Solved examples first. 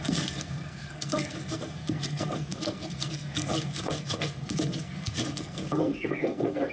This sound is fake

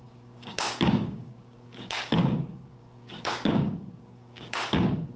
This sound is fake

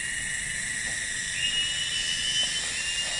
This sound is real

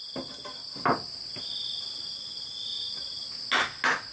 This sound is real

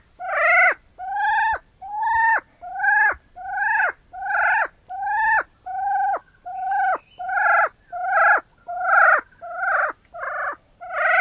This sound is real